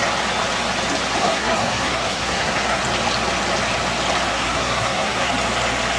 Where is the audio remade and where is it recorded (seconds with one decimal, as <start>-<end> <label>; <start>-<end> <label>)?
0.0-1.2 recorded; 1.2-2.8 remade; 2.8-4.3 recorded; 4.3-5.3 remade; 5.3-6.0 recorded